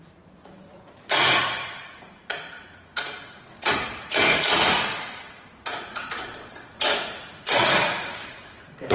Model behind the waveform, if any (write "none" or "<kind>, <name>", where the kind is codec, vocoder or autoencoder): vocoder, Vocos